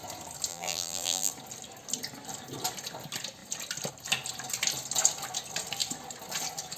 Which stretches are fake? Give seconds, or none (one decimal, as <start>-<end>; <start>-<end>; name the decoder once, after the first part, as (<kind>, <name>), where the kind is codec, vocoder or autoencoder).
0.5-1.3 (vocoder, BigVGAN v2)